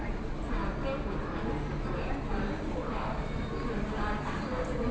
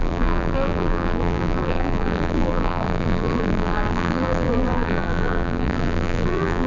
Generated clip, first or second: second